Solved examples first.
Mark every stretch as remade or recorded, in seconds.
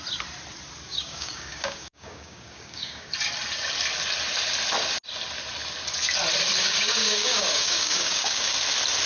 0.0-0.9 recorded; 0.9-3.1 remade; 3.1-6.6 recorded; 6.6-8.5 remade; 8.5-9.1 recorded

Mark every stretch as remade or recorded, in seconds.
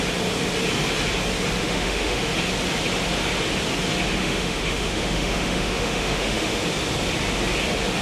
0.0-1.6 recorded; 1.6-2.3 remade; 2.3-4.2 recorded; 4.2-6.6 remade; 6.6-8.0 recorded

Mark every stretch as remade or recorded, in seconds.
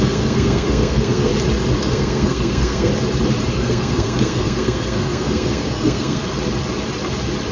0.0-1.3 remade; 1.3-1.8 recorded; 1.8-2.9 remade; 2.9-3.5 recorded; 3.5-6.2 remade; 6.2-7.5 recorded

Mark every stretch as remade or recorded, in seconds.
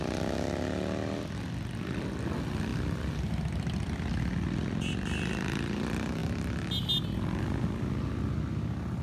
0.0-9.0 recorded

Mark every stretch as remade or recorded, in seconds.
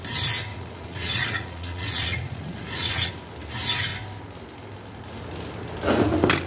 0.0-0.5 recorded; 0.5-3.1 remade; 3.1-6.5 recorded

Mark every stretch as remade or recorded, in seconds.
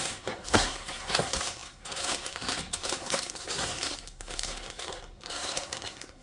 0.0-6.2 remade